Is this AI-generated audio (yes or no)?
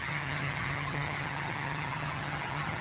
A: yes